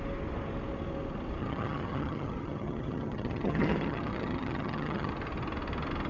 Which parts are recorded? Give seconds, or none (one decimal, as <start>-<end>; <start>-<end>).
0.0-1.4; 5.1-6.1